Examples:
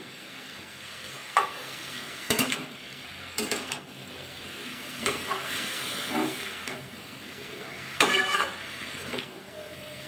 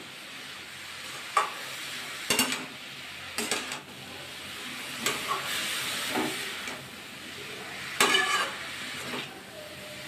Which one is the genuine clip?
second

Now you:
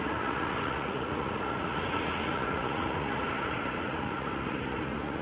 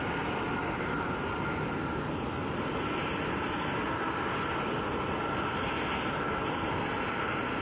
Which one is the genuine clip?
second